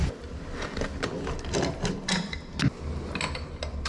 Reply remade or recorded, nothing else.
recorded